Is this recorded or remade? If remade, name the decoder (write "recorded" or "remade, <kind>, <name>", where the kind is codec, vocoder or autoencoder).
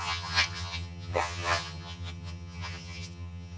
remade, vocoder, HiFi-GAN